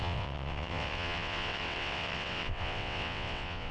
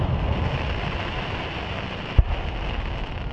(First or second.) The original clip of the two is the second